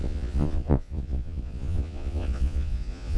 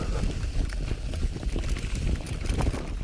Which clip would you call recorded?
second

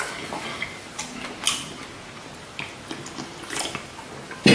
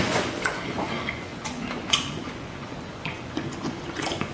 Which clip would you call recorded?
first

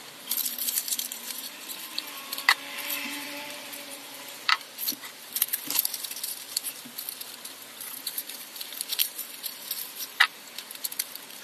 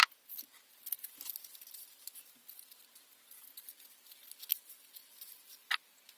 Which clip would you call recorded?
second